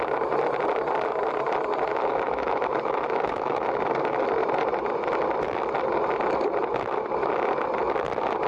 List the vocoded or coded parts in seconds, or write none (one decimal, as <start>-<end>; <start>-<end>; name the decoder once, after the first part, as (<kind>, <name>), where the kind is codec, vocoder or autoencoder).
1.9-4.2 (autoencoder, DAC-VAE)